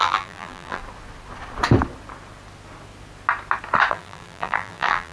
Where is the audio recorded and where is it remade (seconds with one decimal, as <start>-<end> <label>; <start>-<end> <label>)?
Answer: 0.0-0.8 remade; 0.8-3.9 recorded; 3.9-5.1 remade